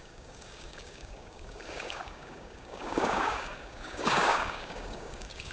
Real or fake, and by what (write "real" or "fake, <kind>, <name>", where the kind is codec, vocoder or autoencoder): fake, codec, DAC